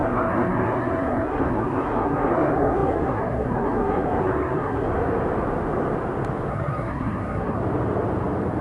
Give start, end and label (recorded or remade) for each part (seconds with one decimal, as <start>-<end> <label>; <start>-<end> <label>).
0.0-4.9 remade; 4.9-6.5 recorded; 6.5-7.6 remade; 7.6-8.6 recorded